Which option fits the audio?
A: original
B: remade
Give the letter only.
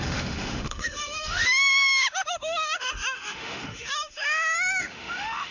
B